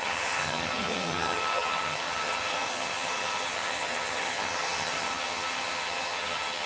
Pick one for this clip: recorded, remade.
remade